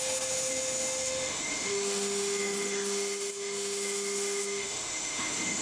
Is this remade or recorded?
remade